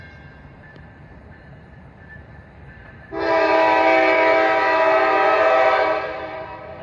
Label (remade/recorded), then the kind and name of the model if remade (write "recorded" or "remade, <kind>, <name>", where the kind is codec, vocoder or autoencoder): remade, vocoder, BigVGAN v2